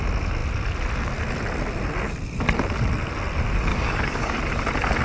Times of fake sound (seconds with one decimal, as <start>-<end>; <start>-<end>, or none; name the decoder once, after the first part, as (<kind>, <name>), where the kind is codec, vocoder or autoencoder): 3.7-4.4 (codec, DAC)